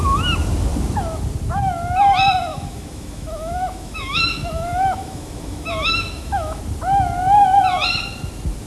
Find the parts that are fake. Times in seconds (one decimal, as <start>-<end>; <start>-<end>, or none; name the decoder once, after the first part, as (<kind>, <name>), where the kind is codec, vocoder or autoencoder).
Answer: 2.5-6.6 (autoencoder, DAC-VAE)